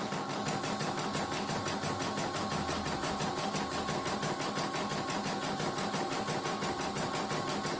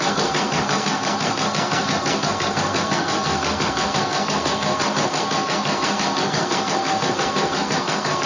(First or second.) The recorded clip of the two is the first